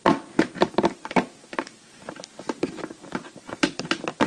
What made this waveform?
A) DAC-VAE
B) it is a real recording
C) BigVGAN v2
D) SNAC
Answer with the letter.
B